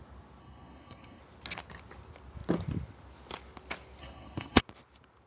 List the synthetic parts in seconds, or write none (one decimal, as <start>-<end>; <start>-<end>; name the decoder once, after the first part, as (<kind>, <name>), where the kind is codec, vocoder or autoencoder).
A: 0.4-1.2 (codec, SNAC); 4.0-4.6